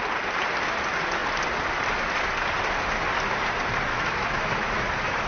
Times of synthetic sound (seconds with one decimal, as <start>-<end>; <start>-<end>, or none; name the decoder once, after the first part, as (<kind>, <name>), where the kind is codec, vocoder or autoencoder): 3.9-5.3 (autoencoder, DAC-VAE)